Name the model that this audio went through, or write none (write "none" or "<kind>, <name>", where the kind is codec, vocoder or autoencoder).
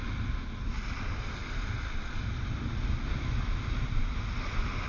none